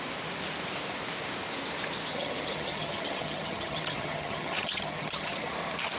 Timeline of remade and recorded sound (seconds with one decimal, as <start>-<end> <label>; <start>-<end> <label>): 0.0-2.1 recorded; 2.1-5.5 remade; 5.5-6.0 recorded